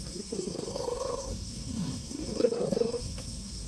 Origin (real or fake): fake